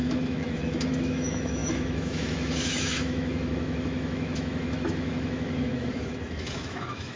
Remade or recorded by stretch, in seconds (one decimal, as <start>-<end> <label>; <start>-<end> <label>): 0.0-7.2 remade